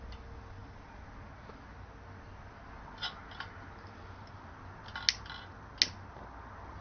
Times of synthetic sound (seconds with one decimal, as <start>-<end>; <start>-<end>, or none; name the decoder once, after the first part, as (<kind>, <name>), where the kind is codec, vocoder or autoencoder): none